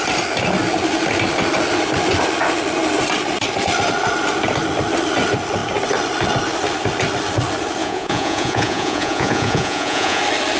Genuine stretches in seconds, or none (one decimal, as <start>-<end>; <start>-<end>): 0.0-7.8; 10.2-10.6